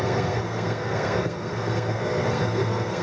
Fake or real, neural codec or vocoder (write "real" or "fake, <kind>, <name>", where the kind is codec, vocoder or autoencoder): fake, codec, SNAC